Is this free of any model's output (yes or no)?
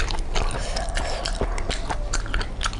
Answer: yes